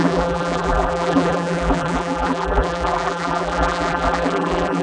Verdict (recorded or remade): remade